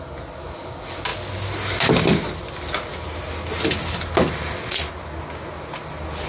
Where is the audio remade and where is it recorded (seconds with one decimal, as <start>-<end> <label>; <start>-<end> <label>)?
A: 0.0-6.3 recorded